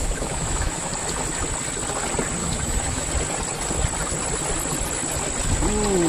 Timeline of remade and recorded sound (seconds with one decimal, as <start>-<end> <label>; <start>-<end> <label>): 0.0-0.9 remade; 0.9-2.4 recorded; 2.4-3.1 remade; 3.1-6.1 recorded